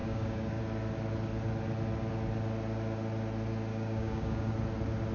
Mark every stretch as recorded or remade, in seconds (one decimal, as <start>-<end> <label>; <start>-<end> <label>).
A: 0.0-0.6 remade; 0.6-3.7 recorded; 3.7-4.5 remade; 4.5-5.1 recorded

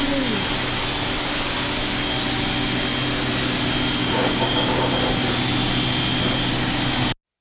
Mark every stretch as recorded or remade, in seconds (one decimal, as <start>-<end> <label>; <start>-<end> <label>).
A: 0.0-4.0 recorded; 4.0-4.9 remade; 4.9-7.4 recorded

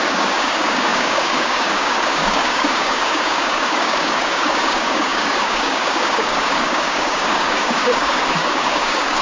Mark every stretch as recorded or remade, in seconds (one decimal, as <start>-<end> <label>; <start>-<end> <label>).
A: 0.0-9.2 remade

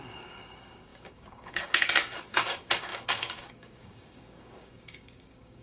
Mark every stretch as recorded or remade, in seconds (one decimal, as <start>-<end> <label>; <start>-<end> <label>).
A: 0.0-5.6 remade

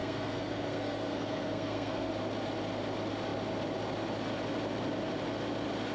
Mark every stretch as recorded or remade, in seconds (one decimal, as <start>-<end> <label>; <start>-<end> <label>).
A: 0.0-2.1 remade; 2.1-5.9 recorded

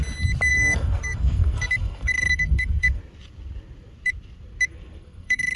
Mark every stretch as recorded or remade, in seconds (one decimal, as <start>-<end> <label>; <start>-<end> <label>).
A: 0.0-0.5 recorded; 0.5-3.0 remade; 3.0-4.7 recorded; 4.7-5.6 remade

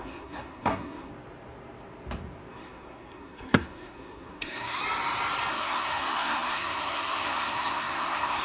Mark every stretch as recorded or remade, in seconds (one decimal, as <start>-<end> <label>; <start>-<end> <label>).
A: 0.0-1.1 remade; 1.1-2.5 recorded; 2.5-4.8 remade; 4.8-5.5 recorded; 5.5-8.4 remade

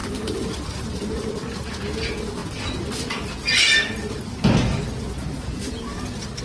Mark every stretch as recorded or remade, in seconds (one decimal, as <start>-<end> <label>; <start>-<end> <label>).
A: 0.0-1.3 remade; 1.3-6.4 recorded